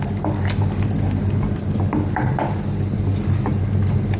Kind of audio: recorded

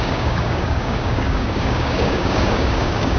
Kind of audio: remade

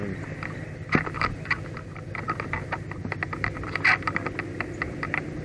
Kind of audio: recorded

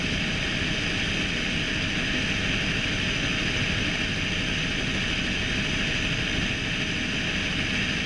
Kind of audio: recorded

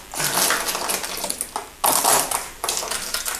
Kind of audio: recorded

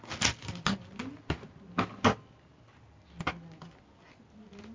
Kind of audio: recorded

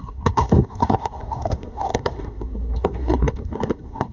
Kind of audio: remade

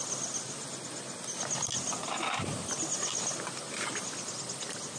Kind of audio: recorded